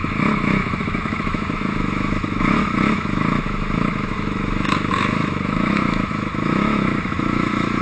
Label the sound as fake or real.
fake